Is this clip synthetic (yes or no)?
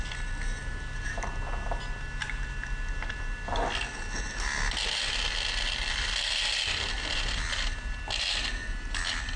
no